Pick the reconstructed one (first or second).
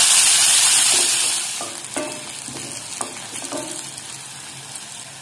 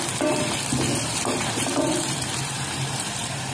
second